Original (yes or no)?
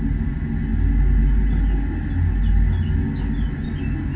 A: yes